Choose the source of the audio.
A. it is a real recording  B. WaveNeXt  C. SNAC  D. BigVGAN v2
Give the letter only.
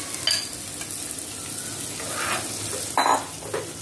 A